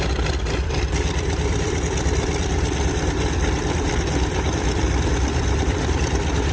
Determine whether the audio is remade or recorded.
remade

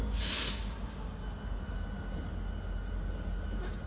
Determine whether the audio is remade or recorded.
recorded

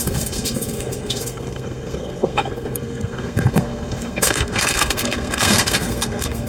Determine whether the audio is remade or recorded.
remade